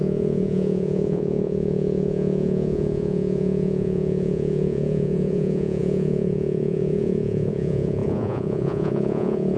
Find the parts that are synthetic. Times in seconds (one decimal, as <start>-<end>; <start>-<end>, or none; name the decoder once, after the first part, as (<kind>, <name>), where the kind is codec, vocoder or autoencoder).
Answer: 0.0-9.6 (vocoder, Vocos)

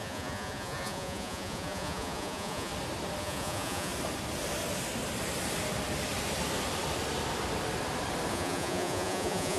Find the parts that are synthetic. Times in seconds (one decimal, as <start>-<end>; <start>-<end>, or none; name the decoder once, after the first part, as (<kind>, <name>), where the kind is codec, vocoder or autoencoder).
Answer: 0.0-2.7 (vocoder, Vocos); 3.2-3.9; 8.3-9.6

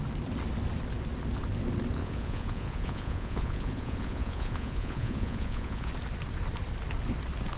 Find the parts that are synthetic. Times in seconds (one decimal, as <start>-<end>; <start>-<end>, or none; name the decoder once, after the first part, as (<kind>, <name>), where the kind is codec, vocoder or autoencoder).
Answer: 2.0-5.9 (vocoder, Vocos)

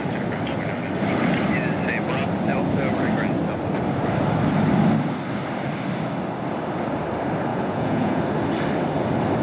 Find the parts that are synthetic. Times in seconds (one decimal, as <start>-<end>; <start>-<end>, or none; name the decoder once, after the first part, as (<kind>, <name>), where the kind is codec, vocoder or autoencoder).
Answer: 7.5-8.2 (vocoder, Vocos)

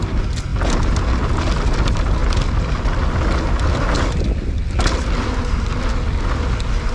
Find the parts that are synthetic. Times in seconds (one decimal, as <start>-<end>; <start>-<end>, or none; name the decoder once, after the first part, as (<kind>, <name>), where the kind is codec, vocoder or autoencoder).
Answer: none

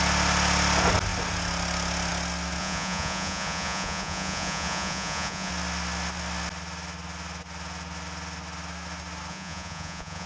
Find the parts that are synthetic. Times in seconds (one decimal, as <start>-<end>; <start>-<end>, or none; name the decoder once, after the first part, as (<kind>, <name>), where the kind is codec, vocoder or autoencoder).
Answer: 2.6-5.5 (vocoder, Vocos); 9.3-10.3

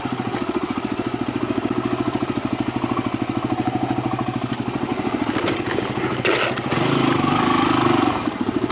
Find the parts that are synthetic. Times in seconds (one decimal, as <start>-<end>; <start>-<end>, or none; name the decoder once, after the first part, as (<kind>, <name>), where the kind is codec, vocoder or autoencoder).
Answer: none